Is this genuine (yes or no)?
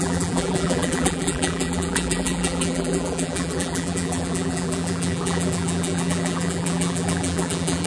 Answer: no